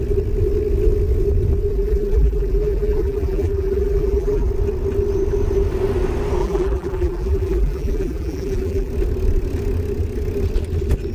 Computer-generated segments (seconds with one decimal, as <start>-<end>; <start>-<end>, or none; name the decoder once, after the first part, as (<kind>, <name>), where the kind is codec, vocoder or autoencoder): 1.7-4.5 (vocoder, BigVGAN v2); 6.4-8.9